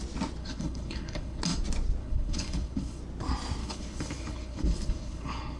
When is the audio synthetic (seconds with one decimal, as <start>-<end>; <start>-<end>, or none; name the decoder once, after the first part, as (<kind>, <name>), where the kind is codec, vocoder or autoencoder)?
0.4-1.4 (codec, HILCodec); 2.0-3.0; 3.6-5.6

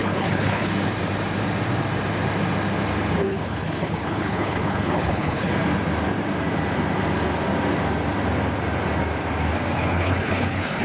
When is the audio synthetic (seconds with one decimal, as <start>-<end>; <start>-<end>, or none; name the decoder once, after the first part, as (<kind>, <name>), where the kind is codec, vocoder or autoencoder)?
0.0-0.7 (codec, HILCodec); 3.2-5.5; 9.7-10.8